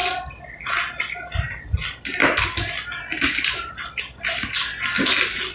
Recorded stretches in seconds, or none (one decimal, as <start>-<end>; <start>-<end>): 0.0-5.5